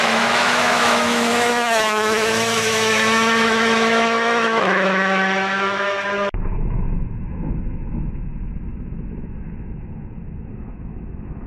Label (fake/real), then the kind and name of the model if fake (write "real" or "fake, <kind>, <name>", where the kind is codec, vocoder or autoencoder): fake, autoencoder, DAC-VAE